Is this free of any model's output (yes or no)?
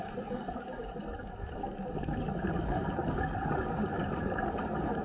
no